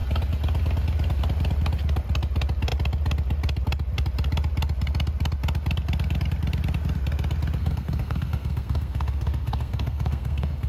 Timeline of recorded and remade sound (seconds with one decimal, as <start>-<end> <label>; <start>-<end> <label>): 0.0-7.6 recorded; 7.6-10.7 remade